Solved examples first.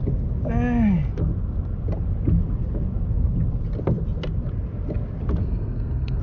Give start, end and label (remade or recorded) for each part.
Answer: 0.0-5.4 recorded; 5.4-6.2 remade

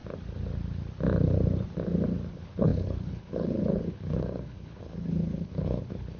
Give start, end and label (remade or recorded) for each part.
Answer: 0.0-2.3 recorded; 2.3-6.2 remade

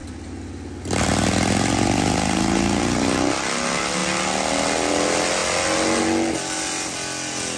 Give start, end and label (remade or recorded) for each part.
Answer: 0.0-7.6 recorded

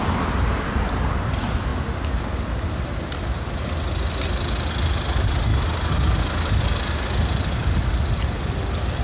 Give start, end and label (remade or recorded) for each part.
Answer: 0.0-9.0 recorded

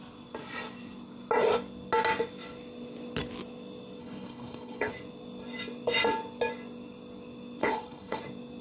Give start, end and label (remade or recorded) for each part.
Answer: 0.0-4.0 recorded; 4.0-4.9 remade; 4.9-7.6 recorded; 7.6-8.2 remade; 8.2-8.6 recorded

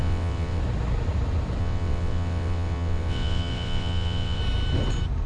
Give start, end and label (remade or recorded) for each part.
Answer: 0.0-0.6 remade; 0.6-1.6 recorded; 1.6-4.4 remade; 4.4-5.3 recorded